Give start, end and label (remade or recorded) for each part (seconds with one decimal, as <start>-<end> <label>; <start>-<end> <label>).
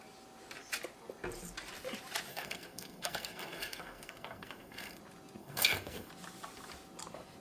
0.0-2.3 recorded; 2.3-5.0 remade; 5.0-5.4 recorded; 5.4-6.1 remade; 6.1-7.4 recorded